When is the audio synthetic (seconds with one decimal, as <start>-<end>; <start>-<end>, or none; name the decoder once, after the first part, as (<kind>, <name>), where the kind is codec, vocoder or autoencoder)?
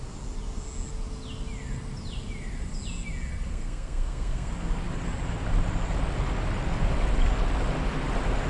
3.5-4.5 (codec, SNAC)